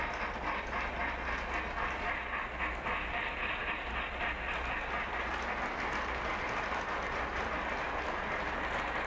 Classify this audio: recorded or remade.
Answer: recorded